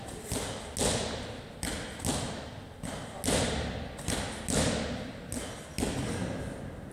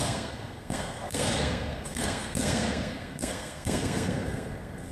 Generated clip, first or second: second